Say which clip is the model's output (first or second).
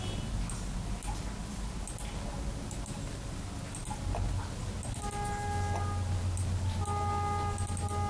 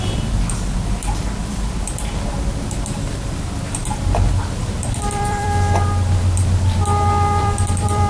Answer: second